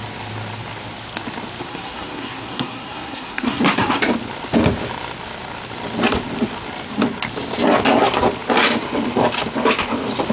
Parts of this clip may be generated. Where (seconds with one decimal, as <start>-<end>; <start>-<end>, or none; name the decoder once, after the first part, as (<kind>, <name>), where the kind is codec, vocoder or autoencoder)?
1.6-4.0 (codec, SNAC)